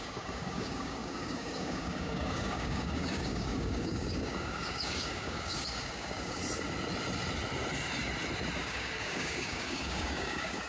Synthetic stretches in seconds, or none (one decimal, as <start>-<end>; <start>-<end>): 0.0-6.4; 8.6-10.7